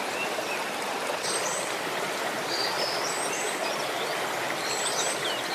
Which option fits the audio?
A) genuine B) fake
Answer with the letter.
B